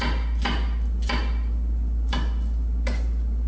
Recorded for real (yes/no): yes